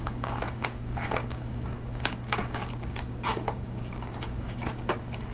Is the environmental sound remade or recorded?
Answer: remade